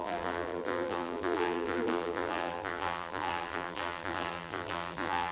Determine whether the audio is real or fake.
fake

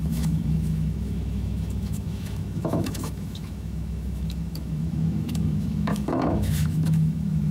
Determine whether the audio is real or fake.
fake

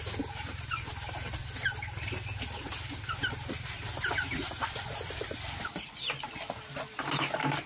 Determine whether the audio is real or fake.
real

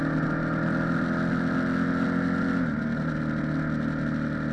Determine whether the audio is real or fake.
real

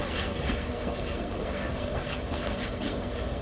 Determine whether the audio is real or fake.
fake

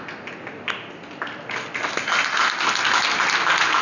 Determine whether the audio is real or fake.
real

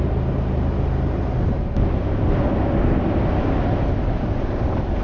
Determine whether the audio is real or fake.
real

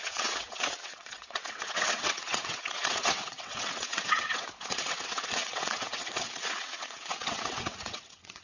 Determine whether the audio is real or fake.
fake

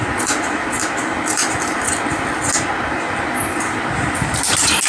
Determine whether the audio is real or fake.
real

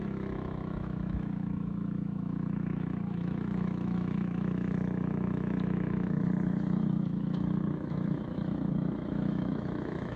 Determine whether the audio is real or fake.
fake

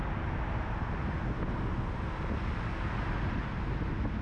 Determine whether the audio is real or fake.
real